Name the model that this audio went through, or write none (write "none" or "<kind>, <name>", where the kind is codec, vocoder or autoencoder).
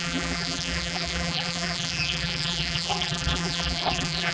vocoder, BigVGAN v2